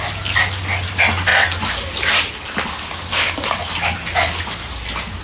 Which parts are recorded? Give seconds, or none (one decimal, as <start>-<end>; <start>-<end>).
0.0-5.2